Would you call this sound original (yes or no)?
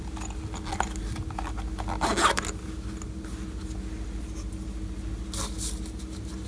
yes